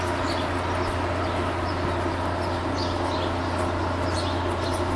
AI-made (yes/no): no